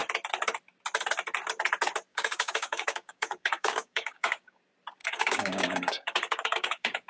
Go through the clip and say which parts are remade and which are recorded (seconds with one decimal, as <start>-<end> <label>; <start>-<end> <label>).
0.0-2.1 recorded; 2.1-4.6 remade; 4.6-5.0 recorded; 5.0-7.1 remade